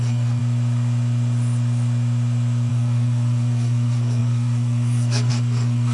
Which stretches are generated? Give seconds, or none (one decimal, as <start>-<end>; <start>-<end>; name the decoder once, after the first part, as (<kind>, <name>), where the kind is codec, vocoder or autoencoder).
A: 0.0-0.4 (codec, SNAC); 2.7-5.9